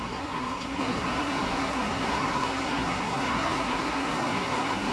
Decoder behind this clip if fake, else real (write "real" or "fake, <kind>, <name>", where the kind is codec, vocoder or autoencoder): fake, codec, SNAC